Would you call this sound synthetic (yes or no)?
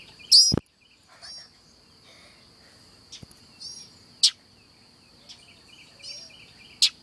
no